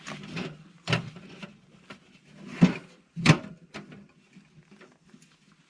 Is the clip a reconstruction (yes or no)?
no